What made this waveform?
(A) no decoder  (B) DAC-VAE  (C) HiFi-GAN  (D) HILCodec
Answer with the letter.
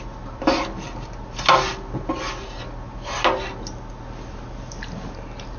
A